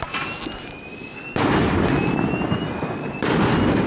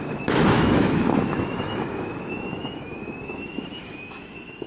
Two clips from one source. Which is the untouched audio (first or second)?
first